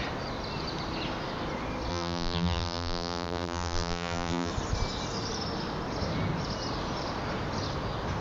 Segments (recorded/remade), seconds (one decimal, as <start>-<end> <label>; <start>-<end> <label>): 0.0-1.9 recorded; 1.9-4.5 remade; 4.5-8.2 recorded

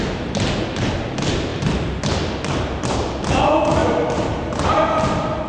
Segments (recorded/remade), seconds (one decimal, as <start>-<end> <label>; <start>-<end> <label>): 0.0-3.8 recorded; 3.8-5.5 remade

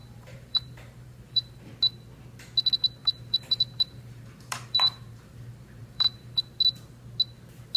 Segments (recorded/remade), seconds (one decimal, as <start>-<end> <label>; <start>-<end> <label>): 0.0-1.7 remade; 1.7-3.0 recorded; 3.0-6.4 remade; 6.4-7.8 recorded